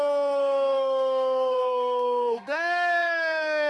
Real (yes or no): no